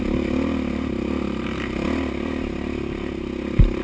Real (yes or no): yes